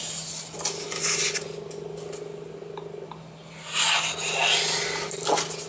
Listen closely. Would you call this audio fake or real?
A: real